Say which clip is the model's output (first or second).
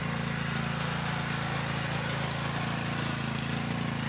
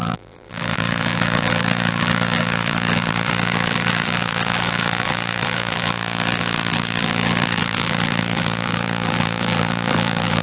second